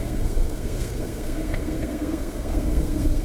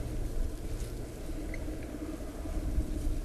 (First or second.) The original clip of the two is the second